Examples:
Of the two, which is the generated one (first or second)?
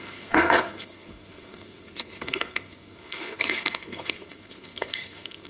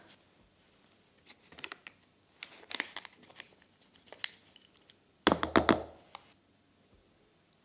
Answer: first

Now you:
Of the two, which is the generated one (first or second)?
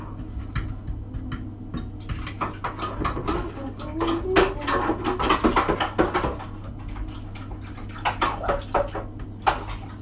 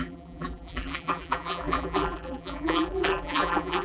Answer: second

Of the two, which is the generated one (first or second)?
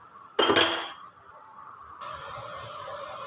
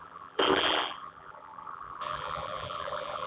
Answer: second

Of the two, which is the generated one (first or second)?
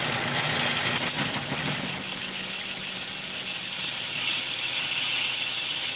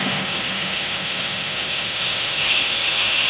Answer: second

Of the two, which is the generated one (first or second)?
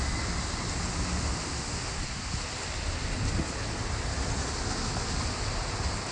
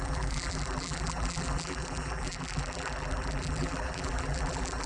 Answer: second